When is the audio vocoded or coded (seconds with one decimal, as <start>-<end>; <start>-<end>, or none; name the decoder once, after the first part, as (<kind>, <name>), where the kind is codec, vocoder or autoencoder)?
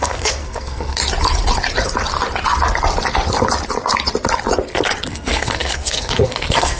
0.0-1.0 (codec, SNAC); 5.1-6.8